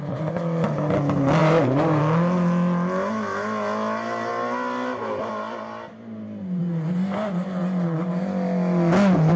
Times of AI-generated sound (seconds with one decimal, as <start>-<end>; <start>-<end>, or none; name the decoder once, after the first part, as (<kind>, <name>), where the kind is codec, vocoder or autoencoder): 1.4-2.0 (vocoder, BigVGAN v2)

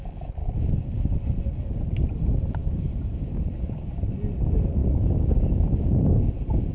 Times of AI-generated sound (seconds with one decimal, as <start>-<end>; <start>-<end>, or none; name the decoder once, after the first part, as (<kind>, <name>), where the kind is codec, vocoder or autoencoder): 0.4-1.1 (codec, DAC); 2.6-4.0; 4.8-6.3

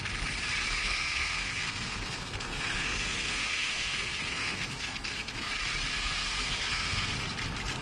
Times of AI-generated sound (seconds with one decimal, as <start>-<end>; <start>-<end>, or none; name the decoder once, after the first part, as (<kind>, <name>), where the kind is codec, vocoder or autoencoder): 0.8-5.5 (codec, SNAC); 5.9-7.1

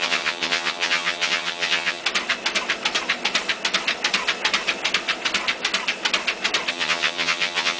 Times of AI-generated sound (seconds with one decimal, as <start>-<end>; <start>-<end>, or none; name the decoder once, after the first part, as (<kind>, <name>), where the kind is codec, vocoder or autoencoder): 0.0-2.0 (vocoder, HiFi-GAN); 6.7-7.8

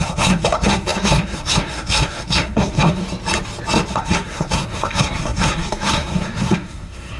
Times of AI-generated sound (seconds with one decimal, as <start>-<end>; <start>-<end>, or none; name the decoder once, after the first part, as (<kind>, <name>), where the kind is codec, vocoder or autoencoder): 0.0-3.0 (codec, SNAC); 3.9-7.2

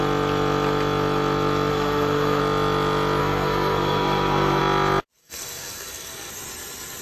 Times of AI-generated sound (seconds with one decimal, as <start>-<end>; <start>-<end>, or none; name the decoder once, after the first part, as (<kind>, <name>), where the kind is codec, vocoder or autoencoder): 1.7-2.4 (codec, SNAC); 3.2-4.6; 5.2-6.3